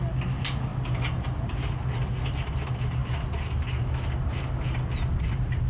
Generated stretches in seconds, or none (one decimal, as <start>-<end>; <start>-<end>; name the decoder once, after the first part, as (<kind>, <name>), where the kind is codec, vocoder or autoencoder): none